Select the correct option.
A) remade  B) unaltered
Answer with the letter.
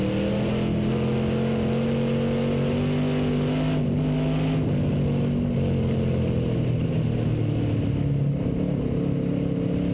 B